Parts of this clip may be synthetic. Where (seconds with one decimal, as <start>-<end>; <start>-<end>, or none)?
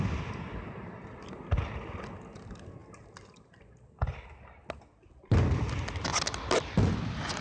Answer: none